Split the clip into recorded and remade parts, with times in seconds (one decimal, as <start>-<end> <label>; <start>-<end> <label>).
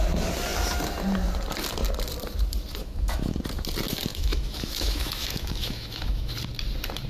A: 0.0-2.8 recorded; 2.8-3.4 remade; 3.4-4.1 recorded; 4.1-6.3 remade; 6.3-7.1 recorded